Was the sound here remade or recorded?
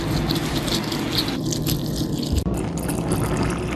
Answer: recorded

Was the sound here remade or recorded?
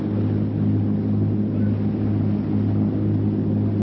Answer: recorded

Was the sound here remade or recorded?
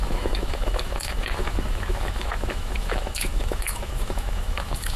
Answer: remade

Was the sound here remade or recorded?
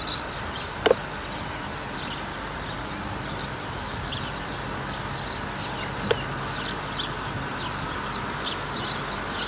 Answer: recorded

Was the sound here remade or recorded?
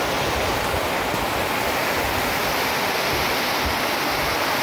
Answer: recorded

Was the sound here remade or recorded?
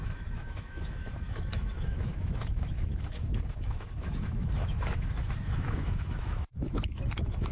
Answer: remade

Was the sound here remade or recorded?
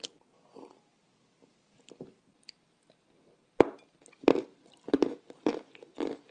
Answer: recorded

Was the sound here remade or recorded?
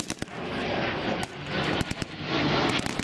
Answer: recorded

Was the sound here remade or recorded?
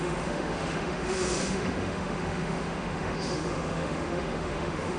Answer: remade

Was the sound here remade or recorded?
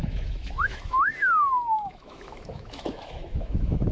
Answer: remade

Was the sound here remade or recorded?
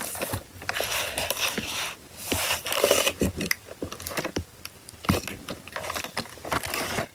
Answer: recorded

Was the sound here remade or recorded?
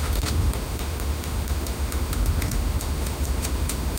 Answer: remade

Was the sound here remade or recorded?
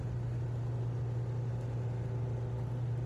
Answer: recorded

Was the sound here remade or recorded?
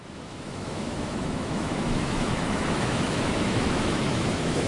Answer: remade